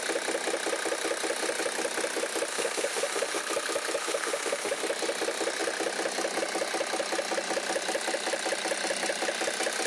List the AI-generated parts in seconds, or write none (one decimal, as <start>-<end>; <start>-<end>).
2.5-3.4; 4.0-4.8